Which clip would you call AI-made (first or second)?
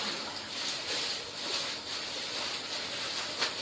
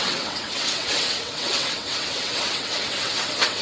second